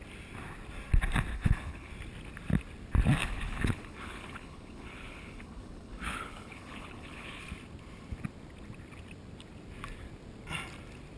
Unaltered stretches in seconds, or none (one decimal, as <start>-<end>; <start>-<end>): 0.0-1.3; 1.9-3.2; 7.4-11.2